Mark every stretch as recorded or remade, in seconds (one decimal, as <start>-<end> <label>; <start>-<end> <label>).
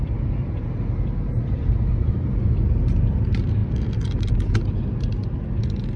0.0-6.0 recorded